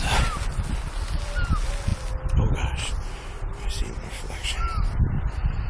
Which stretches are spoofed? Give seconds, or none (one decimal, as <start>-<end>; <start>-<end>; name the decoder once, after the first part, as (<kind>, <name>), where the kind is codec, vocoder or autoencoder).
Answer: none